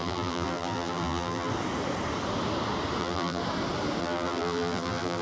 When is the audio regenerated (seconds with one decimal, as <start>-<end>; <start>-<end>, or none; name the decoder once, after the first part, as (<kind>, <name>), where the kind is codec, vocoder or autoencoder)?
0.0-1.5 (vocoder, BigVGAN v2); 3.0-3.4; 4.0-5.2